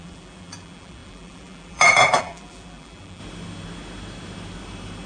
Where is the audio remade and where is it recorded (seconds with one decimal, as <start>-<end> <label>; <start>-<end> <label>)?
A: 0.0-3.2 remade; 3.2-5.1 recorded